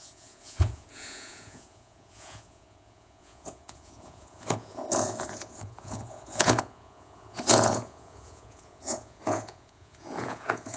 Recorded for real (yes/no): no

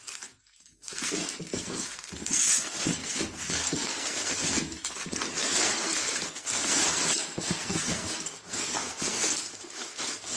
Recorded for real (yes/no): no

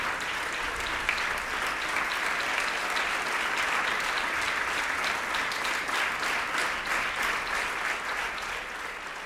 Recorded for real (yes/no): yes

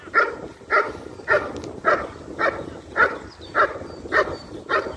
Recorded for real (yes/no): yes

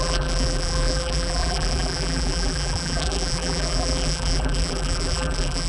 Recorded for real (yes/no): no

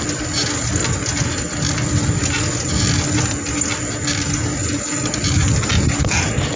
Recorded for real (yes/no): yes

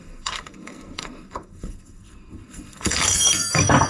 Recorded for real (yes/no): no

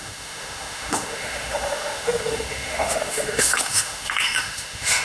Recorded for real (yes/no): no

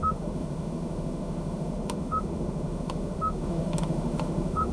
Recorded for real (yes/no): no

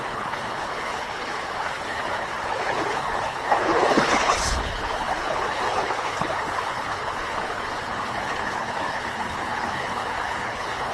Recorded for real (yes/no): no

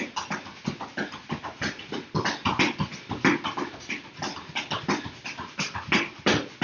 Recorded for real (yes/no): yes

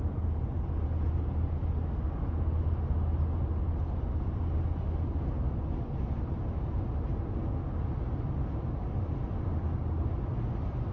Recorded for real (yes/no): yes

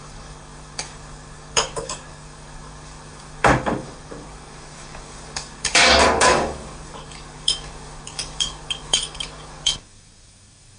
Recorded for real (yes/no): no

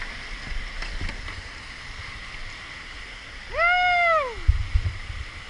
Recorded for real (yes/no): yes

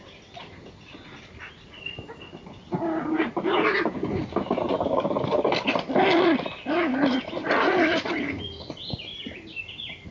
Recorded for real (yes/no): yes